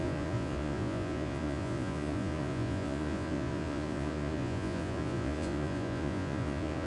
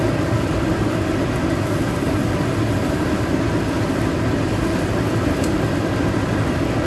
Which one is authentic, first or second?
second